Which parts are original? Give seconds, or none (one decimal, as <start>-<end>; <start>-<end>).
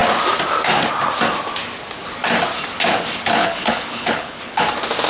0.0-3.4; 4.6-5.1